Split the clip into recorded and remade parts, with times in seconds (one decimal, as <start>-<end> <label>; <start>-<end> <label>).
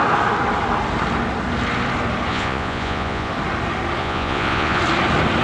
0.0-2.3 recorded; 2.3-3.3 remade; 3.3-4.0 recorded; 4.0-4.8 remade; 4.8-5.4 recorded